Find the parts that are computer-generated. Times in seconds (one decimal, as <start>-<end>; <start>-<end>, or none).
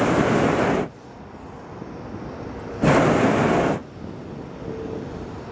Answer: none